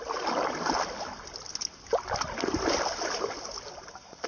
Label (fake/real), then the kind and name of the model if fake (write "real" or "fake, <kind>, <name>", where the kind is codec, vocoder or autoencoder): real